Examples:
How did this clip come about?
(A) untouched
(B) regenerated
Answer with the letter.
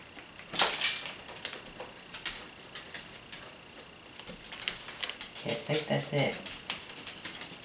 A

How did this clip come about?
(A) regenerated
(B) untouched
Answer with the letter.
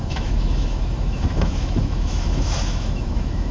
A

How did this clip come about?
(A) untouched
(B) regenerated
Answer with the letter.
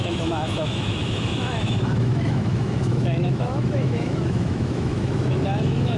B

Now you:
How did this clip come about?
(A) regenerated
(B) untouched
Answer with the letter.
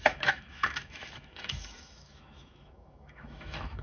A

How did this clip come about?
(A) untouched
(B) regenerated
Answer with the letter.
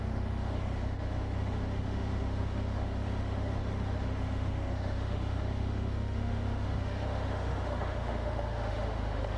B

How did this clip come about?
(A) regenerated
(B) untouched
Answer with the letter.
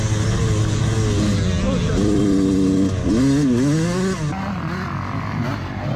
B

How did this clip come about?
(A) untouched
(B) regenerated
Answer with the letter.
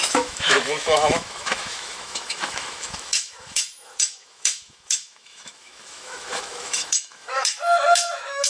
B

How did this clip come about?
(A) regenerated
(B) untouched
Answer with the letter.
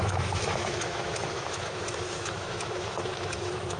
A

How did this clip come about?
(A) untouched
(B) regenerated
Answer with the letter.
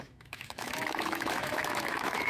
B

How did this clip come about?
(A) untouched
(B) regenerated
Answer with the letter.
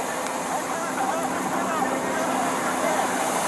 A